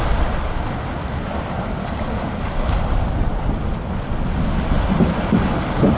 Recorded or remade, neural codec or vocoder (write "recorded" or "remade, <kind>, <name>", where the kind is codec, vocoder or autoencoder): recorded